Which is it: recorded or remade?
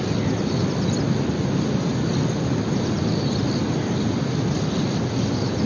recorded